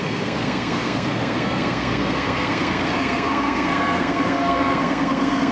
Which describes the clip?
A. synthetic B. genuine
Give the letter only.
A